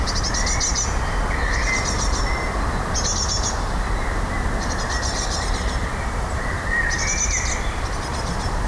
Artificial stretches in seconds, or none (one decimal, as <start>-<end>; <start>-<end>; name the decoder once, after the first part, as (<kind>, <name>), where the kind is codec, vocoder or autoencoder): 0.7-1.8 (vocoder, BigVGAN v2); 5.8-7.1; 8.1-8.7